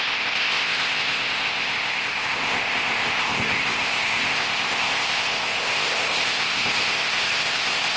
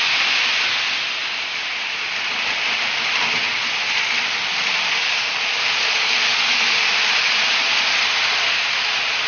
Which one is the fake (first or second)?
first